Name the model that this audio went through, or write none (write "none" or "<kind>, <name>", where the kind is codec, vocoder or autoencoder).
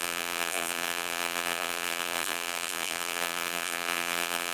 vocoder, BigVGAN v2